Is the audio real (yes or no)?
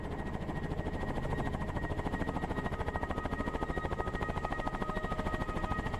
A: yes